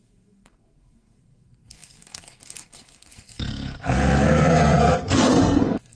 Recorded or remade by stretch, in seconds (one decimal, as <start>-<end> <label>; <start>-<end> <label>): 0.0-6.0 remade